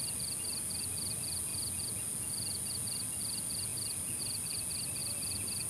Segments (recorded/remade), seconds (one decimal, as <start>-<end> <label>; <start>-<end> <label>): 0.0-5.7 recorded

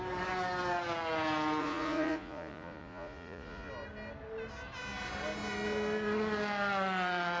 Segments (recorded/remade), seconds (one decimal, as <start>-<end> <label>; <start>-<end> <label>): 0.0-1.6 recorded; 1.6-3.7 remade; 3.7-7.4 recorded

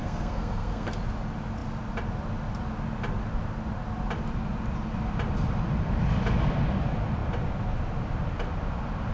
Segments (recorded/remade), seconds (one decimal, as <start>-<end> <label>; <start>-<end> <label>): 0.0-0.9 remade; 0.9-9.1 recorded

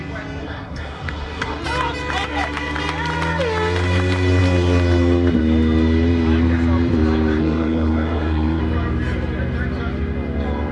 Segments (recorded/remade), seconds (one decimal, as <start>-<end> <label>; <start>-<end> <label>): 0.0-0.4 recorded; 0.4-1.6 remade; 1.6-7.4 recorded; 7.4-8.6 remade; 8.6-10.7 recorded